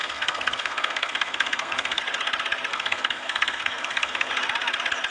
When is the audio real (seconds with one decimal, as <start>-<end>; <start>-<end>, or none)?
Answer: 2.0-2.7; 4.3-5.1